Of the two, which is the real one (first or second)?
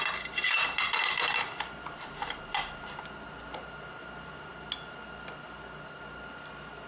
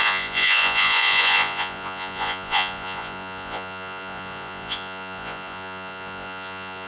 first